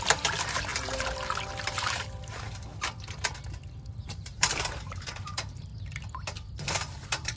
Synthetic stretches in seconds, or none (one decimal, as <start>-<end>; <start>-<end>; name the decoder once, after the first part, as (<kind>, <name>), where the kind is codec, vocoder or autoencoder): 0.0-2.7 (vocoder, BigVGAN v2); 4.0-5.7; 6.5-7.4